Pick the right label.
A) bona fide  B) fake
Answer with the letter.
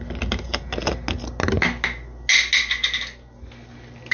A